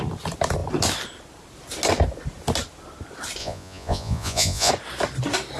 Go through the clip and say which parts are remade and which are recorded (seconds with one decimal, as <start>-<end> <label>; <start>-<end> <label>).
0.0-3.4 recorded; 3.4-4.7 remade; 4.7-5.6 recorded